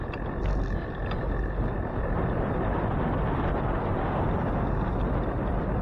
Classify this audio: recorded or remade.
recorded